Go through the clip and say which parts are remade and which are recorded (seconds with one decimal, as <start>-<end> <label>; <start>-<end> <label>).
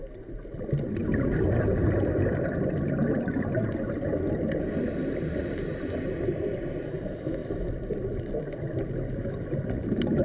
0.0-1.0 recorded; 1.0-2.6 remade; 2.6-7.4 recorded; 7.4-9.4 remade; 9.4-10.2 recorded